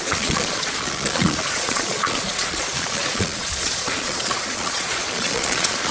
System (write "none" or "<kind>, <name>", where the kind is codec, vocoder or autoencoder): vocoder, Vocos